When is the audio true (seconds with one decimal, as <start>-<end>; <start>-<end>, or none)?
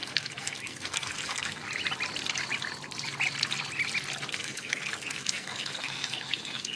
1.6-4.3